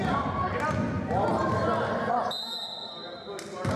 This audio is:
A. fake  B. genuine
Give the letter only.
B